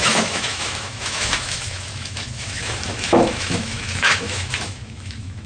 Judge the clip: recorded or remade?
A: remade